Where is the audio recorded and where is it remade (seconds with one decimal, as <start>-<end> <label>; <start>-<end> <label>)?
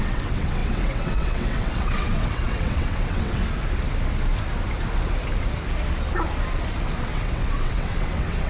0.0-3.4 remade; 3.4-7.0 recorded; 7.0-8.5 remade